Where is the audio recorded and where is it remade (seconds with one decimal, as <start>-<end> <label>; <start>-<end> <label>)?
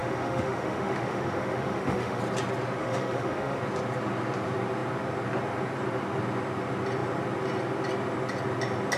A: 0.0-2.2 remade; 2.2-2.8 recorded; 2.8-3.6 remade; 3.6-9.0 recorded